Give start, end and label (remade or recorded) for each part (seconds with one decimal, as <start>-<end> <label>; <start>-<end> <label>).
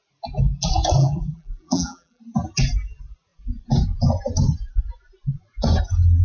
0.0-1.0 recorded; 1.0-2.2 remade; 2.2-6.2 recorded